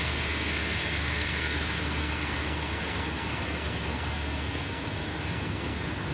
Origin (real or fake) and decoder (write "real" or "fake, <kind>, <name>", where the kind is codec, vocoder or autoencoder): fake, codec, SNAC